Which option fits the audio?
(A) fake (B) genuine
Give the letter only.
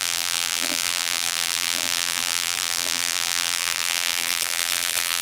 A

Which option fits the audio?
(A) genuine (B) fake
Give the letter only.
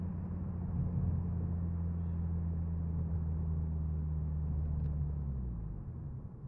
A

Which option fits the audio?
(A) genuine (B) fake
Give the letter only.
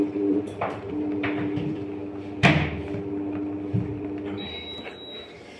B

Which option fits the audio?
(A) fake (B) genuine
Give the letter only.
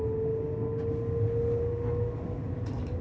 B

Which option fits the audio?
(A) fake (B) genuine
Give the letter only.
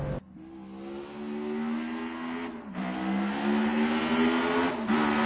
B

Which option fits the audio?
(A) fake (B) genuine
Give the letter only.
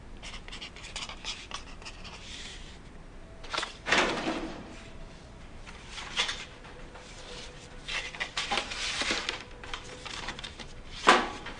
A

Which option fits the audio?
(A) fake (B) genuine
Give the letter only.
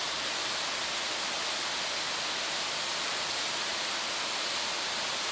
B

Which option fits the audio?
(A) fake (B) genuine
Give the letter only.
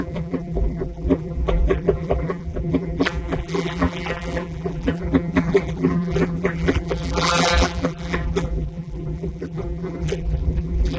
A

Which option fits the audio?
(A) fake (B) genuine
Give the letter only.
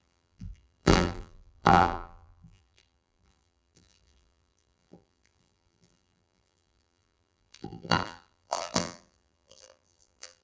A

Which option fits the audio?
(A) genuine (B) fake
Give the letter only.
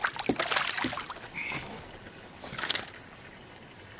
A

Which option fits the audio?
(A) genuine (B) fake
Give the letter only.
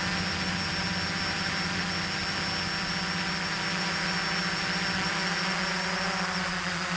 A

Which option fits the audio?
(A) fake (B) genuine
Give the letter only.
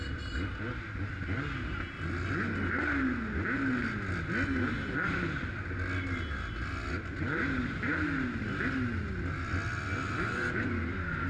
B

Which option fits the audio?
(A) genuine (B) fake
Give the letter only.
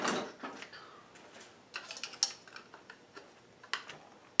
A